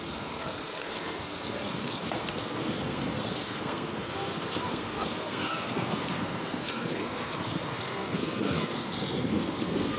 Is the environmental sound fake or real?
fake